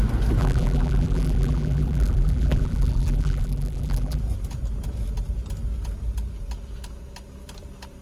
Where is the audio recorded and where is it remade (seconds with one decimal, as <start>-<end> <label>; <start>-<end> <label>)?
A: 0.0-0.4 recorded; 0.4-4.2 remade; 4.2-8.0 recorded